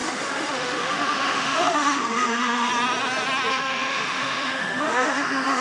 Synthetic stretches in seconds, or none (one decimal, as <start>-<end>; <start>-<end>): 0.0-2.7; 3.5-5.6